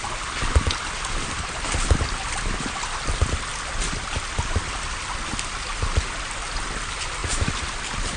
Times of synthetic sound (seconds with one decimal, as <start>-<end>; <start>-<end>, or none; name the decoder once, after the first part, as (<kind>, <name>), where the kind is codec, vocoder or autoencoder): none